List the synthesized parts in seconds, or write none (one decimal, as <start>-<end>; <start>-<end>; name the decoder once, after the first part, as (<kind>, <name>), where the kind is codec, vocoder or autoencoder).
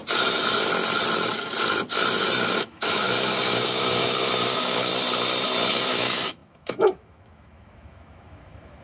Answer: 2.5-4.9 (autoencoder, DAC-VAE); 5.7-8.8